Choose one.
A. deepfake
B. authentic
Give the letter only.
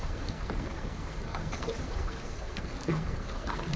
A